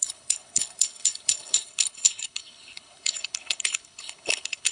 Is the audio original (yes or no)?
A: no